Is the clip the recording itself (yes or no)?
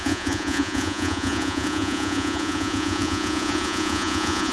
no